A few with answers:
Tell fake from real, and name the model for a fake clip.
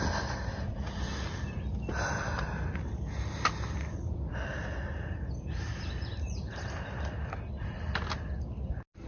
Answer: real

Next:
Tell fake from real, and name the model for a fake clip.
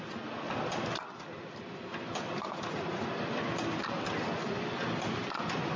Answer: real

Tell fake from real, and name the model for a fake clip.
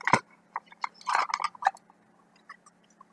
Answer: real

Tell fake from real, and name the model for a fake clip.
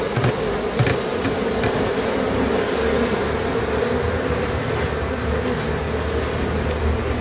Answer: real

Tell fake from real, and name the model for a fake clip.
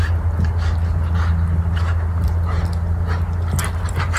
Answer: real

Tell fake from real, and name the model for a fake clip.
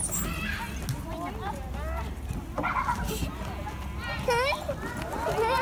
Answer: real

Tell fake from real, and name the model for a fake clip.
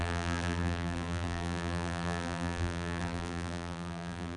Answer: fake, vocoder, BigVGAN v2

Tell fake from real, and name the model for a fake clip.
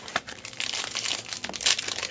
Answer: real